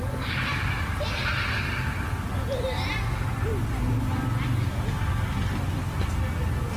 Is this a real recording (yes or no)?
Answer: yes